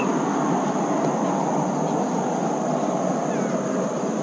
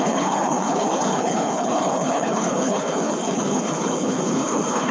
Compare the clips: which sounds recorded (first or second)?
first